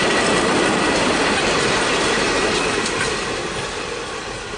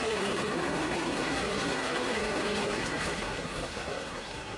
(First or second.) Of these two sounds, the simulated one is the second